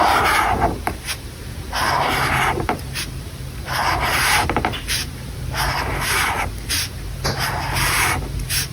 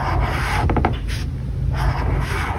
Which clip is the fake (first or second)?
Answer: first